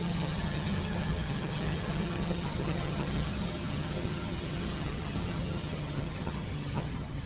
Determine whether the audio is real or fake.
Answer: fake